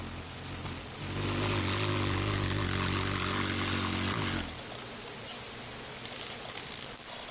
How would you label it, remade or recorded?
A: recorded